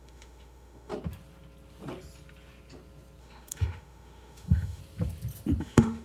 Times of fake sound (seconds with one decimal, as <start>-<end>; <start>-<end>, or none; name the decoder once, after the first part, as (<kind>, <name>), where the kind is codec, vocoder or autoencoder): 0.0-0.9 (autoencoder, DAC-VAE); 3.2-4.8; 5.6-6.0